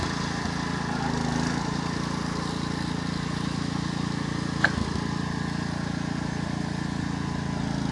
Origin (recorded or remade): recorded